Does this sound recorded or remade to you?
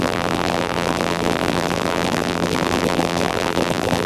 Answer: remade